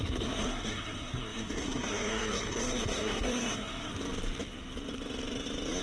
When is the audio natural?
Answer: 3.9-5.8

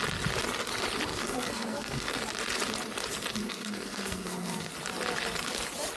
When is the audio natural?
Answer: 0.0-1.1; 2.2-3.4; 4.7-6.0